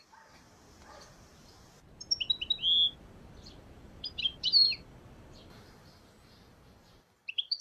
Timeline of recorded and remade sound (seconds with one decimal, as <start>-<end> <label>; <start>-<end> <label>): 0.0-1.3 remade; 1.3-3.0 recorded; 3.0-7.6 remade